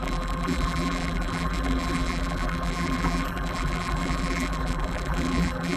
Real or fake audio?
fake